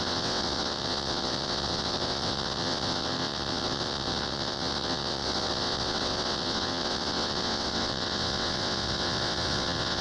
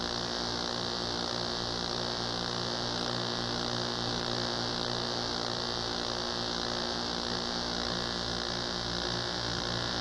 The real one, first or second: second